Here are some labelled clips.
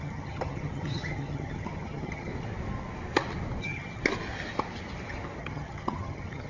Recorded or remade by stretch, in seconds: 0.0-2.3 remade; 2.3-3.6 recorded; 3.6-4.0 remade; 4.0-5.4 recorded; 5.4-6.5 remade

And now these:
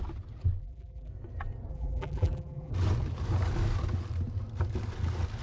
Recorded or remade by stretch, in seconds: 0.0-0.6 recorded; 0.6-1.1 remade; 1.1-1.7 recorded; 1.7-2.7 remade; 2.7-5.4 recorded

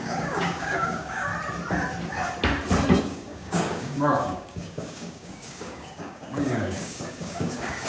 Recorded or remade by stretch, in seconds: 0.0-1.3 remade; 1.3-3.0 recorded; 3.0-7.9 remade

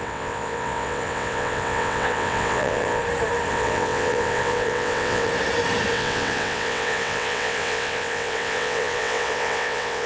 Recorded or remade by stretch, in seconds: 0.0-3.0 remade; 3.0-3.5 recorded; 3.5-5.3 remade; 5.3-5.9 recorded; 5.9-10.1 remade

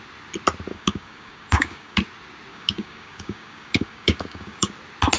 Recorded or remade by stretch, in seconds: 0.0-0.7 recorded; 0.7-2.0 remade; 2.0-2.5 recorded; 2.5-4.7 remade; 4.7-5.2 recorded

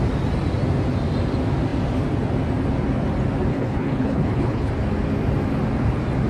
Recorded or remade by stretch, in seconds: 0.0-3.5 recorded; 3.5-4.7 remade; 4.7-6.3 recorded

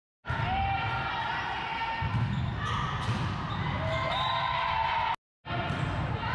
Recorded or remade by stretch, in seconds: 0.0-6.3 recorded

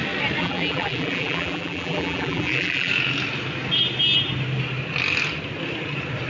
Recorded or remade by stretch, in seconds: 0.0-0.4 recorded; 0.4-2.9 remade; 2.9-6.3 recorded